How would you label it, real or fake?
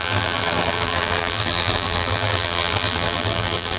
fake